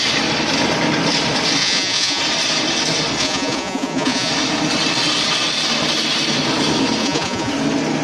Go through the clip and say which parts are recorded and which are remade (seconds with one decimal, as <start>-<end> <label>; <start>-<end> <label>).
0.0-1.6 recorded; 1.6-2.2 remade; 2.2-3.2 recorded; 3.2-4.3 remade; 4.3-7.0 recorded; 7.0-7.5 remade; 7.5-8.0 recorded

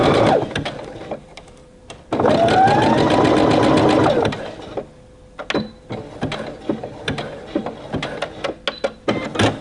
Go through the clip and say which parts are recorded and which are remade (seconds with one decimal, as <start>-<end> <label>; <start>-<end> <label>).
0.0-2.1 remade; 2.1-4.0 recorded; 4.0-4.7 remade; 4.7-6.8 recorded; 6.8-7.6 remade; 7.6-9.6 recorded

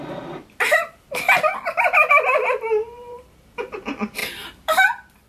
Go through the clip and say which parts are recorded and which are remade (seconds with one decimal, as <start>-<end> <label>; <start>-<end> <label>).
0.0-4.2 remade; 4.2-5.3 recorded

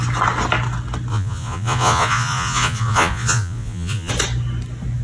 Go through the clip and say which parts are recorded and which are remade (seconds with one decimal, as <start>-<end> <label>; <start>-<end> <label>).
0.0-1.1 recorded; 1.1-4.1 remade; 4.1-5.0 recorded

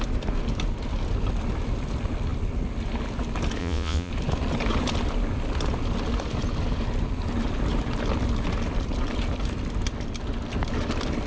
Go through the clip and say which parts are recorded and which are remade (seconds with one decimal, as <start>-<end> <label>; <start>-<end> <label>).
0.0-3.6 recorded; 3.6-4.1 remade; 4.1-11.3 recorded

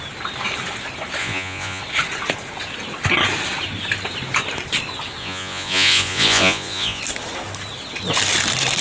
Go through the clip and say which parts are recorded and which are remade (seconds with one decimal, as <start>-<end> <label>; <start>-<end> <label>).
0.0-1.2 recorded; 1.2-1.8 remade; 1.8-5.2 recorded; 5.2-7.0 remade; 7.0-8.8 recorded

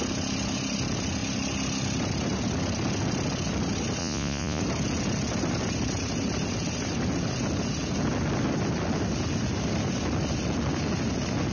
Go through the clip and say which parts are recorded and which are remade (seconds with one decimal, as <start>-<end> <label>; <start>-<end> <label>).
0.0-4.0 recorded; 4.0-4.6 remade; 4.6-11.5 recorded

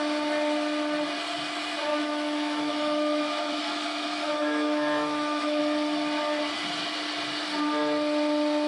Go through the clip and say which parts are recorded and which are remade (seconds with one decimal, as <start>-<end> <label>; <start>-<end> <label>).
0.0-1.9 recorded; 1.9-5.6 remade; 5.6-8.7 recorded